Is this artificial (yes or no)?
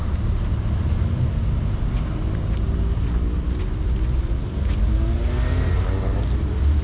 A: no